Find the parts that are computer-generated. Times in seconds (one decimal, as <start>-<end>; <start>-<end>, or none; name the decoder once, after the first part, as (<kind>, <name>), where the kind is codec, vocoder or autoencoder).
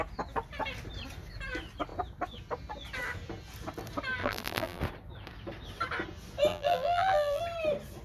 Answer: 4.2-4.8 (vocoder, BigVGAN v2); 6.5-7.4